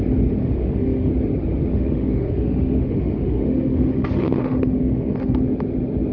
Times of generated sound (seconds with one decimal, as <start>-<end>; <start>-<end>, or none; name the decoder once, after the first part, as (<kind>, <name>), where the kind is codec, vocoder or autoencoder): 0.4-1.1 (autoencoder, DAC-VAE); 1.7-5.4